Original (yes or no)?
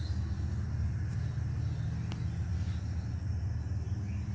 yes